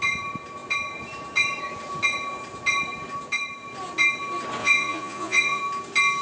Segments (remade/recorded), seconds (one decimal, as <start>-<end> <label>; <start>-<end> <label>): 0.0-4.6 recorded; 4.6-5.6 remade; 5.6-6.2 recorded